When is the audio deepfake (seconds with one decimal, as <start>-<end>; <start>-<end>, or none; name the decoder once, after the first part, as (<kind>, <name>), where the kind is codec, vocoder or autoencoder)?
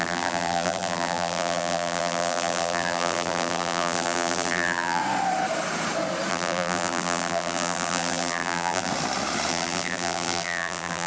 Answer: 0.0-5.0 (vocoder, BigVGAN v2); 6.3-8.9; 9.5-11.1